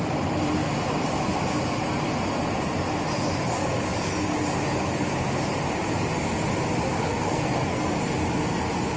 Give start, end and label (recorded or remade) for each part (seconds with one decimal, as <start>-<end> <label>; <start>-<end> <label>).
0.0-7.0 recorded; 7.0-8.0 remade; 8.0-9.0 recorded